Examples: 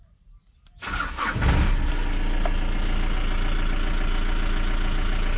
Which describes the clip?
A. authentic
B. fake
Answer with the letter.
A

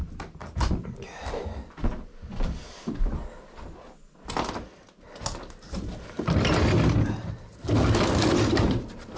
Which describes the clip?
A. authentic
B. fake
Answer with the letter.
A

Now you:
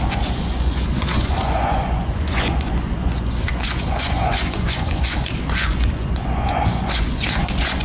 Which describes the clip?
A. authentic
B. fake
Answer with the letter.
B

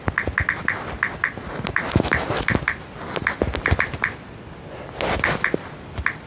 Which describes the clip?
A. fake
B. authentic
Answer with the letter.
B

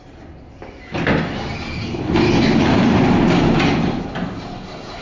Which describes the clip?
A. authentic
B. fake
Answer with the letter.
A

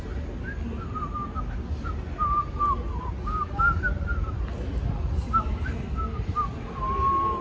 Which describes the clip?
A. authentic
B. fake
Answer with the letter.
A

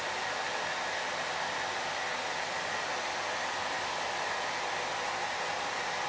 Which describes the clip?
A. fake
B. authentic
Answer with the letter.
B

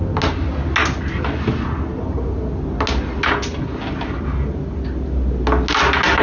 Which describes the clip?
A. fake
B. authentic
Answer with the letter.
B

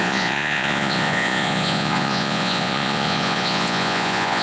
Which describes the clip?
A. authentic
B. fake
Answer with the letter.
B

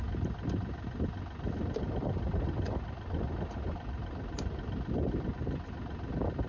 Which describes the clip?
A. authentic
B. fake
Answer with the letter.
A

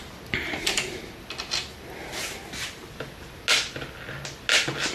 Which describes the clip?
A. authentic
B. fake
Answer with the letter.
A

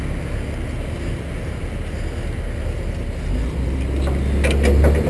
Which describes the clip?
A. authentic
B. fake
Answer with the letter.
A